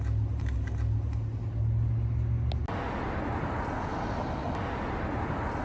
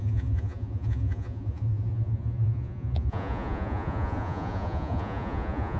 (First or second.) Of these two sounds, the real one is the first